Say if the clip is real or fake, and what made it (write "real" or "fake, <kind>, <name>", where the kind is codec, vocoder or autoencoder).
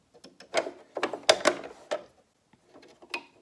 real